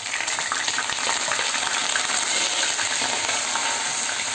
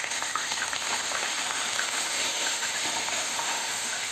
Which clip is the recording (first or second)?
first